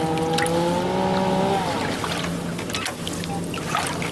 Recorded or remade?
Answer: recorded